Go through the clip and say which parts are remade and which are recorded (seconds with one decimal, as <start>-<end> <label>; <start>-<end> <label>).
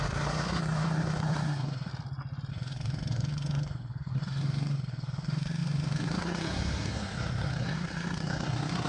0.0-1.9 remade; 1.9-2.5 recorded; 2.5-8.9 remade